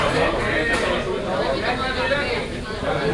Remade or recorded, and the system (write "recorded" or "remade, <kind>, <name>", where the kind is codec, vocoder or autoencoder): recorded